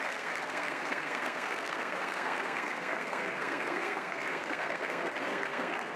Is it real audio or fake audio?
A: fake